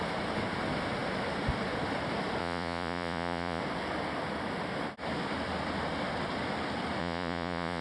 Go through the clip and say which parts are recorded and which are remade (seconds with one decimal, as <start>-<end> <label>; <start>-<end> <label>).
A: 0.0-2.4 recorded; 2.4-3.6 remade; 3.6-7.0 recorded; 7.0-7.8 remade